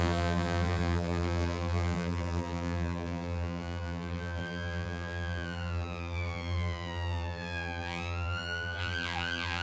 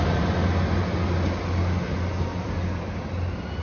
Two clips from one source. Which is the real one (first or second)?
second